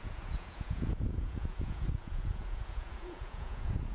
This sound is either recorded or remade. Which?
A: remade